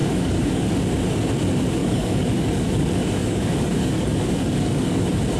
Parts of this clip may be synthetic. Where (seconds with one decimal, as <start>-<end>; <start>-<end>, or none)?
0.0-0.7; 1.8-5.0